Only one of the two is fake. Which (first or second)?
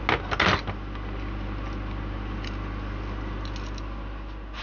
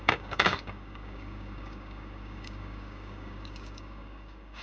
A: second